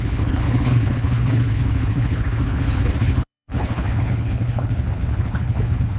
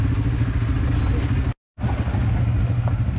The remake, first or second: first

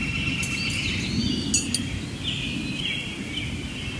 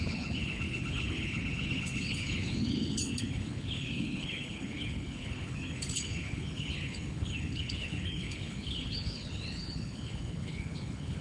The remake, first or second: second